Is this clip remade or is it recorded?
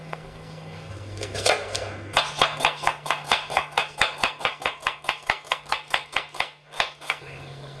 remade